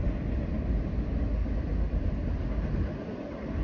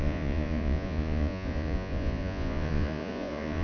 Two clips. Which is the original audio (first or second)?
first